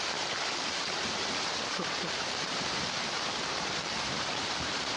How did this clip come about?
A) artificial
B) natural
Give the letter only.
A